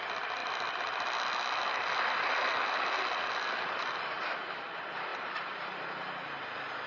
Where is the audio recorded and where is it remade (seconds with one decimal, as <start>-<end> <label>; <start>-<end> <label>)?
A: 0.0-0.4 recorded; 0.4-1.6 remade; 1.6-5.1 recorded; 5.1-5.8 remade; 5.8-6.9 recorded